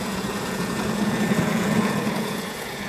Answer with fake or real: fake